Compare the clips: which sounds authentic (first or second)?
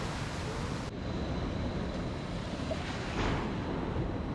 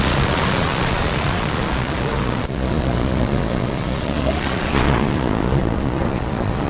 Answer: first